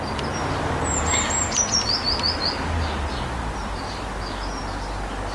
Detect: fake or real real